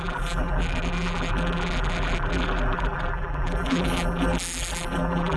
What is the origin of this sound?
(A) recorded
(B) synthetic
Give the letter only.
B